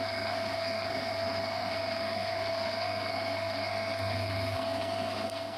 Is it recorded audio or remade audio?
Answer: remade